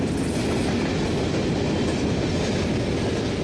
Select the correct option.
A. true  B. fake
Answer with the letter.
A